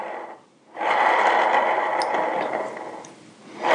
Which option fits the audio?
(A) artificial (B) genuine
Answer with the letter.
B